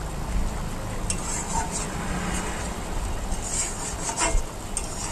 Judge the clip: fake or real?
real